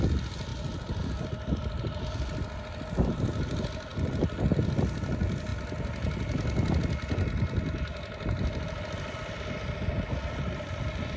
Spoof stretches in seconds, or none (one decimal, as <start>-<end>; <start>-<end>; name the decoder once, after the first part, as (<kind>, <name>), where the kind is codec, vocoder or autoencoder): 0.5-2.0 (vocoder, BigVGAN v2)